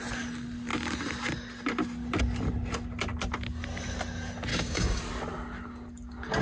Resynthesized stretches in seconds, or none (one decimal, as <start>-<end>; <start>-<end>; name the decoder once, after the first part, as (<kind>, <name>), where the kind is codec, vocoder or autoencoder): 4.5-5.0 (codec, DAC)